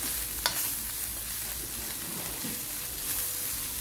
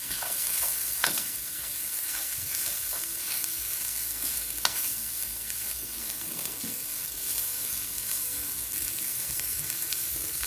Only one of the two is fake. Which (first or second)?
second